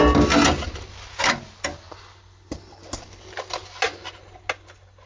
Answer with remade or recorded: recorded